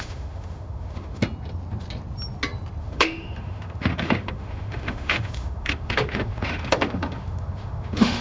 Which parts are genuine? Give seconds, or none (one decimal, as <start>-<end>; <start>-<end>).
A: 1.2-2.8